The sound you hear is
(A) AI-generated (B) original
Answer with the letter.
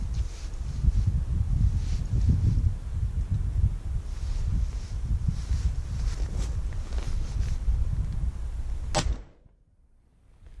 B